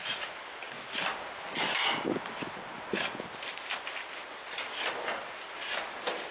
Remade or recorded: recorded